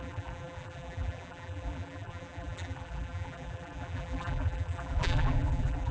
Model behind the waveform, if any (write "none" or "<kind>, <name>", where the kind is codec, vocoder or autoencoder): vocoder, BigVGAN v2